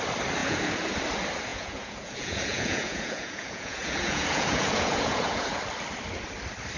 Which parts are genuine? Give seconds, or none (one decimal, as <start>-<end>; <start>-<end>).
0.0-0.4; 1.0-1.5; 5.6-6.8